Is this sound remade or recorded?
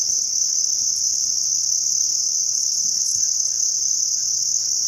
remade